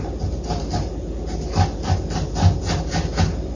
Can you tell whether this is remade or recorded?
recorded